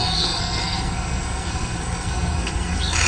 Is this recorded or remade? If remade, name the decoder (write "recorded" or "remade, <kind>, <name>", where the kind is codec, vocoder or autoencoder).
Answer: remade, codec, SNAC